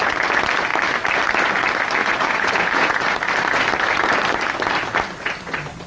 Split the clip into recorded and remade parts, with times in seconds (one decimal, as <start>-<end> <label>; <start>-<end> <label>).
0.0-2.0 recorded; 2.0-3.0 remade; 3.0-5.9 recorded